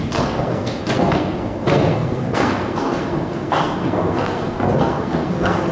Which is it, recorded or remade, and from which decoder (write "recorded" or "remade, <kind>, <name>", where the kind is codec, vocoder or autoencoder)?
remade, codec, SNAC